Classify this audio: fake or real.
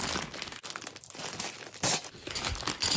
real